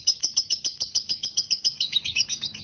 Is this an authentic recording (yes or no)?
no